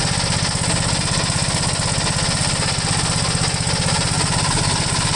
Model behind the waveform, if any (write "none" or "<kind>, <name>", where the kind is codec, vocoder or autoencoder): none